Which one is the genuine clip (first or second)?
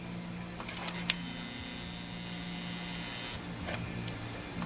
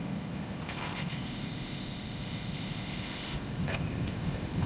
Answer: first